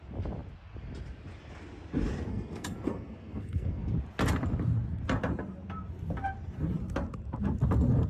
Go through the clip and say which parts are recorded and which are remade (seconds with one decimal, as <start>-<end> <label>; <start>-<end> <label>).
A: 0.0-2.3 recorded; 2.3-3.9 remade; 3.9-8.1 recorded